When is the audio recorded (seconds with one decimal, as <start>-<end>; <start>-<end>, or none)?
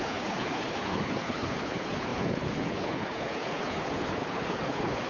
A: none